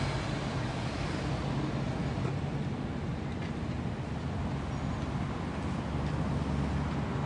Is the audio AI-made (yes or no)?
no